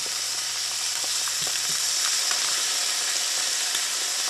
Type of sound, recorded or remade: remade